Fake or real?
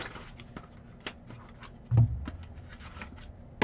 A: real